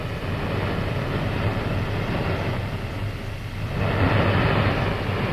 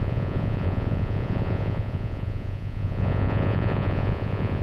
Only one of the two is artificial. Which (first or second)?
second